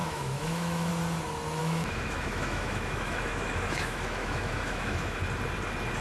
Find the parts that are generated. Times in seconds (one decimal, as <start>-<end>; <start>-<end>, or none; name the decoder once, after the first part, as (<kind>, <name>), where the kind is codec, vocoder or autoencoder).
0.0-0.9 (autoencoder, DAC-VAE); 1.6-5.2